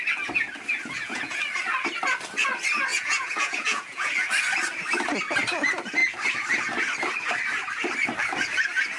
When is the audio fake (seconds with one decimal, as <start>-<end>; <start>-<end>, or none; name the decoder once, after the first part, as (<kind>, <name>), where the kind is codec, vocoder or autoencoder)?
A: 0.8-1.4 (vocoder, Vocos); 2.9-4.1